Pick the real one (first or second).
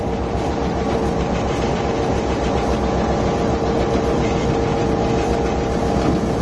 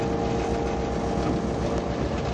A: second